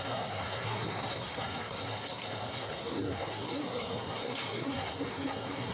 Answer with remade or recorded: remade